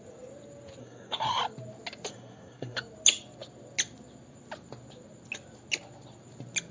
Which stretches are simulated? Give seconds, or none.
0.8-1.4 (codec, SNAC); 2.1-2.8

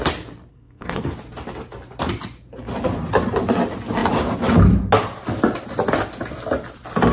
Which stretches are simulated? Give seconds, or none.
0.5-1.1 (codec, SNAC)

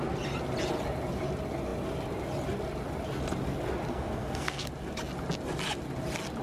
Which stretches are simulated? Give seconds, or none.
3.9-4.7 (codec, SNAC)

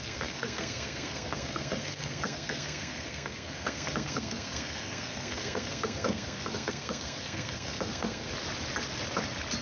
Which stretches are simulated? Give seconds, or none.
0.0-8.3 (codec, SNAC)

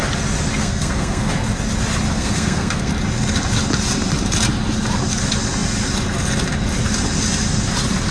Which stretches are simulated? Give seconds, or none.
0.6-1.3 (codec, SNAC); 2.1-2.9

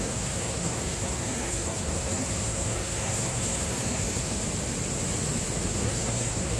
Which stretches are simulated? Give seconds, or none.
0.0-4.4 (codec, SNAC); 5.6-6.6

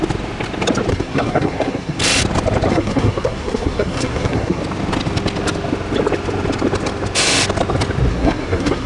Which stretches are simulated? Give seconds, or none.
0.9-2.0 (codec, SNAC); 2.7-4.6; 8.1-8.9